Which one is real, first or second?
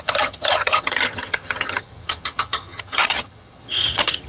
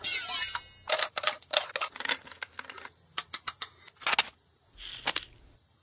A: second